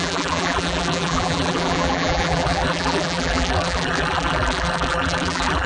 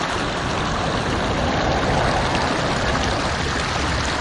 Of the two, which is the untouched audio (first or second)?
second